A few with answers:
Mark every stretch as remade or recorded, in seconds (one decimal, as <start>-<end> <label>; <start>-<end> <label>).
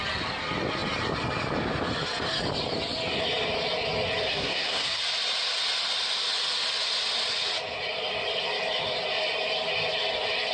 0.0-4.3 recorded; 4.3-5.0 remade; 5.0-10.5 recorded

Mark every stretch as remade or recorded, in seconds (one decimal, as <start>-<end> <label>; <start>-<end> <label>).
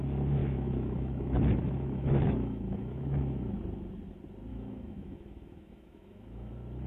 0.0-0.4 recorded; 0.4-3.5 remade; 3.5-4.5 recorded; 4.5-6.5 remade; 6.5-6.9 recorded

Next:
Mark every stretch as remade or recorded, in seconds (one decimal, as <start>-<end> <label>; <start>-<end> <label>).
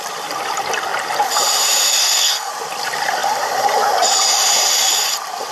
0.0-2.0 recorded; 2.0-2.5 remade; 2.5-5.5 recorded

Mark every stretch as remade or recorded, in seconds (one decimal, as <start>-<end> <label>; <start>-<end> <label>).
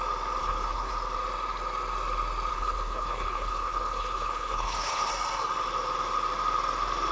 0.0-0.4 recorded; 0.4-0.9 remade; 0.9-2.5 recorded; 2.5-5.1 remade; 5.1-7.1 recorded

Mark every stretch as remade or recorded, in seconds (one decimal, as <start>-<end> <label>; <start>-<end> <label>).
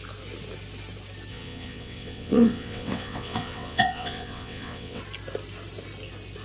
0.0-1.3 recorded; 1.3-5.0 remade; 5.0-6.4 recorded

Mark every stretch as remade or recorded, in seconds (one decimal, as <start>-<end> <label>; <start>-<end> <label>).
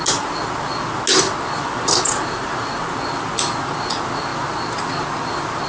0.0-5.7 recorded